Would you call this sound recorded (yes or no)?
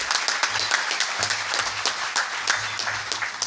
yes